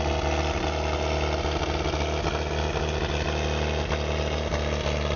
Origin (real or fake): real